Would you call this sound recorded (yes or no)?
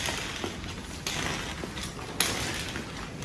yes